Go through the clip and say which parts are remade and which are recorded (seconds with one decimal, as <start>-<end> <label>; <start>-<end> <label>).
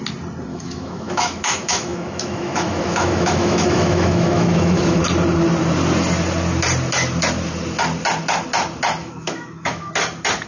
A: 0.0-0.5 recorded; 0.5-5.0 remade; 5.0-9.0 recorded; 9.0-9.9 remade; 9.9-10.5 recorded